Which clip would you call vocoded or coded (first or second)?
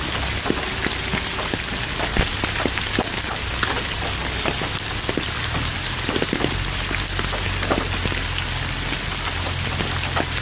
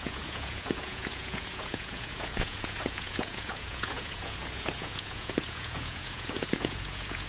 second